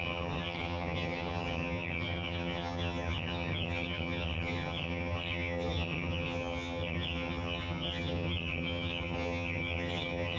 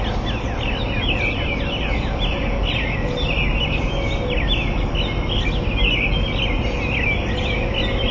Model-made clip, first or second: first